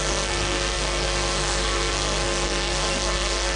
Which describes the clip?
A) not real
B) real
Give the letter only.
A